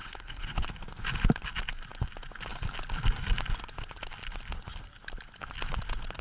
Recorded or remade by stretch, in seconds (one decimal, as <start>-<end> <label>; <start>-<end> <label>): 0.0-0.7 remade; 0.7-6.2 recorded